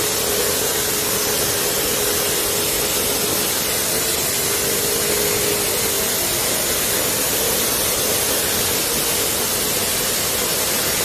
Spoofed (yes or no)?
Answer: no